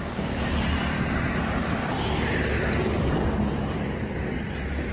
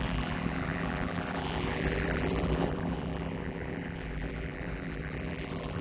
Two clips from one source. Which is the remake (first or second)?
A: second